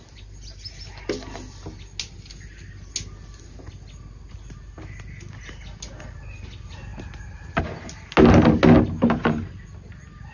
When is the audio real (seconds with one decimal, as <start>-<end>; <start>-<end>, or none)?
0.0-10.3

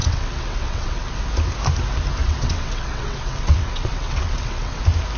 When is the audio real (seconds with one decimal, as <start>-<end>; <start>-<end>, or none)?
1.3-2.2; 4.8-5.2